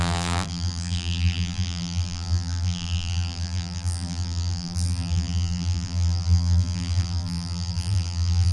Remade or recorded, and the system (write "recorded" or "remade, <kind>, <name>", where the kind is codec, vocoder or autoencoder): remade, vocoder, BigVGAN v2